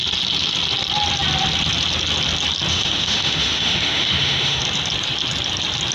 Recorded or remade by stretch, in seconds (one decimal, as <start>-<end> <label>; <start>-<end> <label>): 0.0-2.7 recorded; 2.7-4.6 remade; 4.6-5.9 recorded